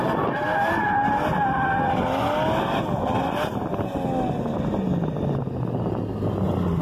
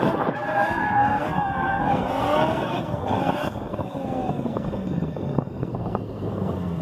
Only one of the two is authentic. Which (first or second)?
first